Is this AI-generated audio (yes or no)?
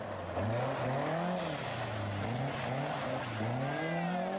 no